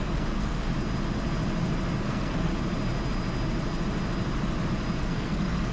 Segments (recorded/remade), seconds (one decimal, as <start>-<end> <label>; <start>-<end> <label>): 0.0-0.7 remade; 0.7-2.0 recorded; 2.0-2.5 remade; 2.5-5.0 recorded; 5.0-5.7 remade